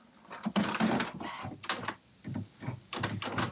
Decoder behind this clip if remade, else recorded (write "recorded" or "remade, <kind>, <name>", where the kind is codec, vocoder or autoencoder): recorded